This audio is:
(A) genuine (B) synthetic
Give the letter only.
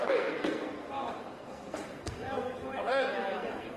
B